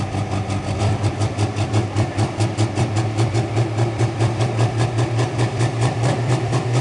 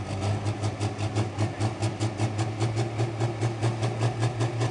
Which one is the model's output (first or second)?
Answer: first